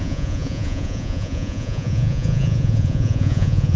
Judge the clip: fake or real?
fake